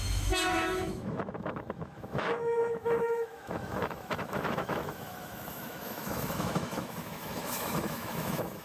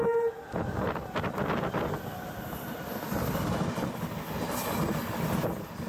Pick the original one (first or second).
second